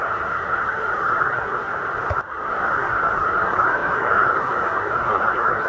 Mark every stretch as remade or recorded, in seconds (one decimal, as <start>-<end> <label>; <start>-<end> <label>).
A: 0.0-1.7 remade; 1.7-2.2 recorded; 2.2-5.7 remade